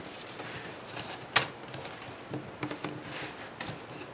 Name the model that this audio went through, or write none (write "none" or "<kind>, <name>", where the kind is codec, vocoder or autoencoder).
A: none